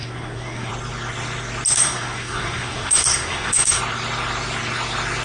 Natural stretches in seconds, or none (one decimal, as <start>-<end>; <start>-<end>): 0.7-1.8; 3.8-5.2